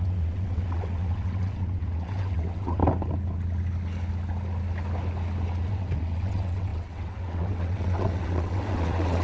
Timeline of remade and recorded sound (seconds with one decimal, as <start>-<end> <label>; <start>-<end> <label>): 0.0-2.8 remade; 2.8-5.7 recorded; 5.7-9.2 remade